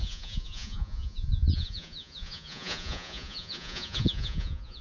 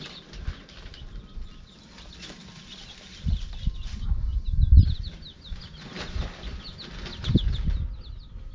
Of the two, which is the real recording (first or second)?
second